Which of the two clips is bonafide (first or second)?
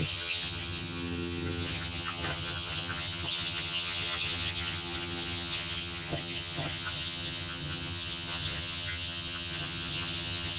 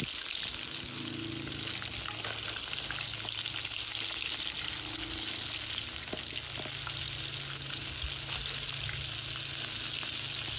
second